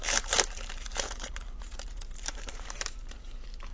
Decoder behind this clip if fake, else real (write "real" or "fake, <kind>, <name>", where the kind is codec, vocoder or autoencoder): fake, vocoder, BigVGAN v2